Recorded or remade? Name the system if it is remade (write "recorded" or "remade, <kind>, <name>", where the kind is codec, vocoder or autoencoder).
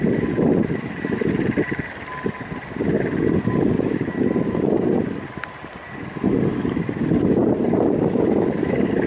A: recorded